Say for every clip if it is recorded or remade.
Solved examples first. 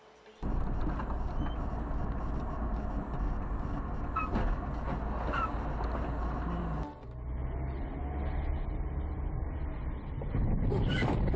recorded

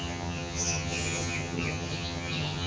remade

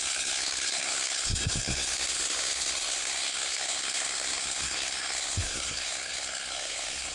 remade